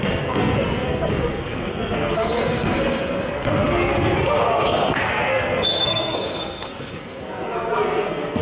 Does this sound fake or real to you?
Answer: fake